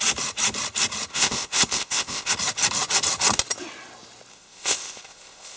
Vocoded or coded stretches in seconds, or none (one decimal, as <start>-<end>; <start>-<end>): 1.1-2.3; 4.3-5.6